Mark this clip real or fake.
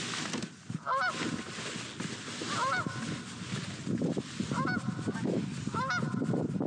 real